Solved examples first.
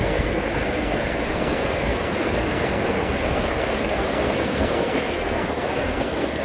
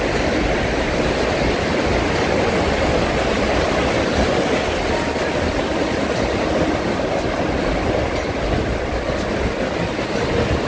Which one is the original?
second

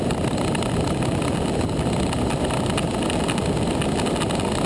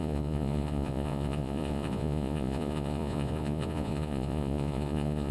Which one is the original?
first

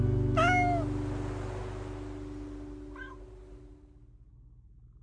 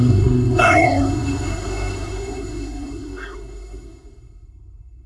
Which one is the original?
first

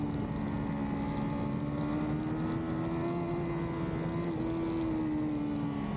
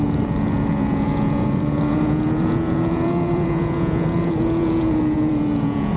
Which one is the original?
first